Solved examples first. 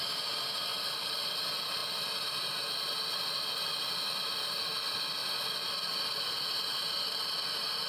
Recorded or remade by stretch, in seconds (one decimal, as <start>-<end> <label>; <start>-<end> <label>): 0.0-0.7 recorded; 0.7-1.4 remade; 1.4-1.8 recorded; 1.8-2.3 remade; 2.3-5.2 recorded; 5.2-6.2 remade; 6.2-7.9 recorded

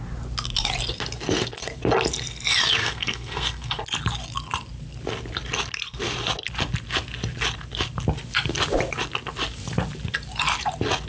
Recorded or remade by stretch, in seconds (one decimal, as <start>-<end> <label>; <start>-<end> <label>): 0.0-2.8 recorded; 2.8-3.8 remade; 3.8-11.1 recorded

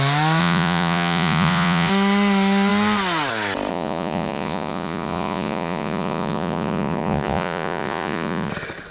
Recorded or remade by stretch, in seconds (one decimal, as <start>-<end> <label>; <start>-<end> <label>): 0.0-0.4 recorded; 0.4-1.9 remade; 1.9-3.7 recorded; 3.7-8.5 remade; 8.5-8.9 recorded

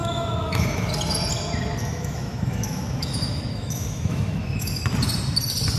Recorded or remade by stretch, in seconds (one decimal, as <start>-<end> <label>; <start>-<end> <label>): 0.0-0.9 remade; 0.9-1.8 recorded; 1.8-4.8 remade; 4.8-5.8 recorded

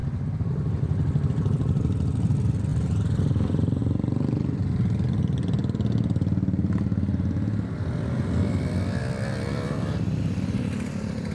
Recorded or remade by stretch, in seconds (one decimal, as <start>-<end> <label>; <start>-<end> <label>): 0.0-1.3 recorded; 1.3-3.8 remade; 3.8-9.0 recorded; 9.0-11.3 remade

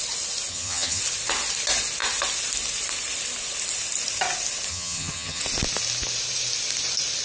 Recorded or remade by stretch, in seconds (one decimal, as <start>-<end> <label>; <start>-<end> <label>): 0.0-0.5 recorded; 0.5-1.0 remade; 1.0-4.7 recorded; 4.7-5.4 remade; 5.4-7.2 recorded

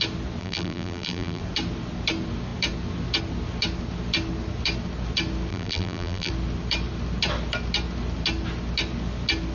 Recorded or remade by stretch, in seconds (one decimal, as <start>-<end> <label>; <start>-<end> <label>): 0.0-0.4 recorded; 0.4-1.4 remade; 1.4-5.5 recorded; 5.5-6.3 remade; 6.3-9.5 recorded